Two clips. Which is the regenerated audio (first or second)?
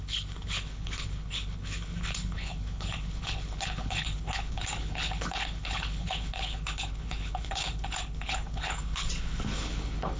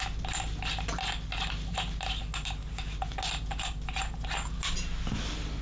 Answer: first